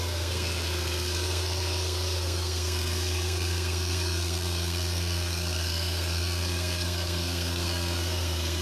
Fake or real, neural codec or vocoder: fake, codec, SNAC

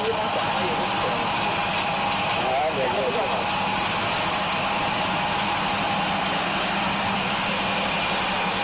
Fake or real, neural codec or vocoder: real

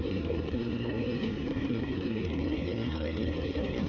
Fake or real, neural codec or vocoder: fake, codec, SNAC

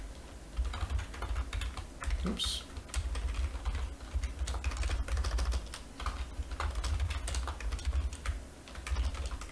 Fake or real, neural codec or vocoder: real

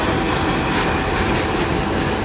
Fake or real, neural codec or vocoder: real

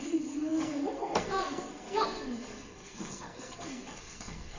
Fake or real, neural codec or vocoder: fake, codec, SNAC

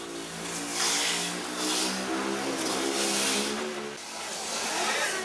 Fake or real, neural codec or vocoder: real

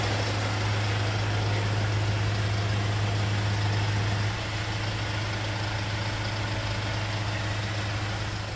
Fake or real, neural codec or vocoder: real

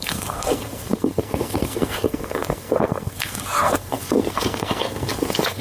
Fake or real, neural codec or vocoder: fake, codec, SNAC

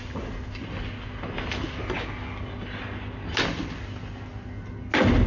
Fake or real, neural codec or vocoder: real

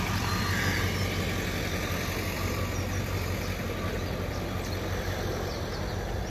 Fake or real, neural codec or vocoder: real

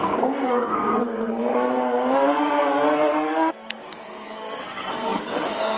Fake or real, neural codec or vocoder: fake, codec, SNAC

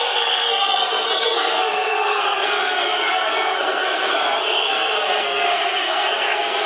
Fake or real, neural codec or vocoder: fake, codec, SNAC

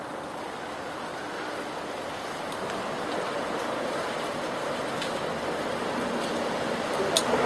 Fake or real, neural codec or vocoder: real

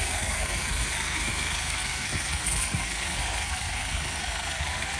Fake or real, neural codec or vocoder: fake, codec, SNAC